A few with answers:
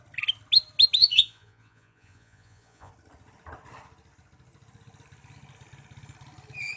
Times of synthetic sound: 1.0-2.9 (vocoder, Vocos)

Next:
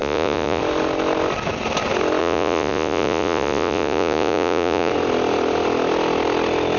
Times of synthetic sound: 0.0-0.6 (vocoder, Vocos); 2.2-4.9